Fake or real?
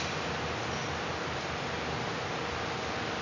real